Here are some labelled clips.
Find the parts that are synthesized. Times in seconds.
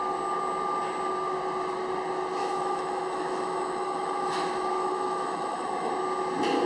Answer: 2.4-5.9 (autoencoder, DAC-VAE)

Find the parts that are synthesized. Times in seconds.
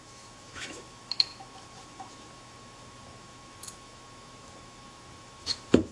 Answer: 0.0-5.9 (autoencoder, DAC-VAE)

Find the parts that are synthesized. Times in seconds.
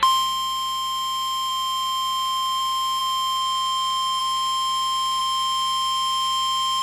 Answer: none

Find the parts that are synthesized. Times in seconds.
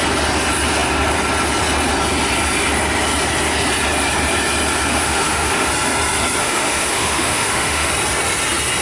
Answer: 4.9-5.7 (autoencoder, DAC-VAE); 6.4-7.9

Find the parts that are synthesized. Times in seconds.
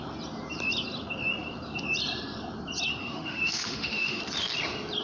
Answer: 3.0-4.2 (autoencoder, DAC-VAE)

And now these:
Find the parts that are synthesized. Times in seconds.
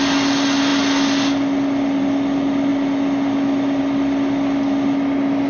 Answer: none